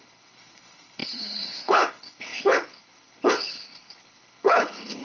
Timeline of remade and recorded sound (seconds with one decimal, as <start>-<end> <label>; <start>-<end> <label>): 0.0-5.0 remade